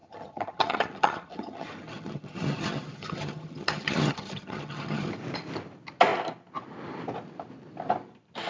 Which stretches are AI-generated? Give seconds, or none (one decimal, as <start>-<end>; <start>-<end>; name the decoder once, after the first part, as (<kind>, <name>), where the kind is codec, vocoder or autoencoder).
0.0-5.1 (vocoder, HiFi-GAN)